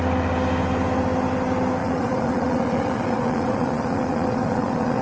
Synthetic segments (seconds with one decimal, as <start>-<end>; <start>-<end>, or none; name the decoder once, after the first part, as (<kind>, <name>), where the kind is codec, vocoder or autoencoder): 1.8-5.0 (vocoder, Vocos)